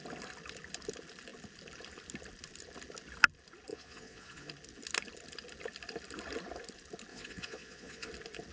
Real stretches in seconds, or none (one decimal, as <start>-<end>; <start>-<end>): 0.0-3.7; 4.5-7.1; 8.1-8.5